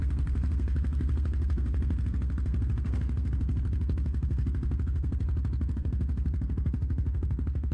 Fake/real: fake